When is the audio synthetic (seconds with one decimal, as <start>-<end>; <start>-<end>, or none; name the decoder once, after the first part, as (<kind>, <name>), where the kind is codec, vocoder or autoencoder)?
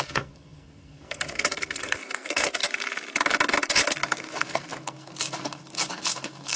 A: 0.0-2.6 (codec, SNAC); 4.1-6.6